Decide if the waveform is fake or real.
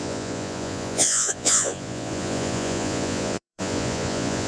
fake